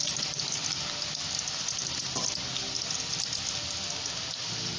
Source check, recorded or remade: recorded